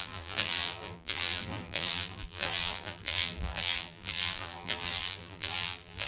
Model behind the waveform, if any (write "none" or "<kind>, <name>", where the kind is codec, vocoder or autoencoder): vocoder, BigVGAN v2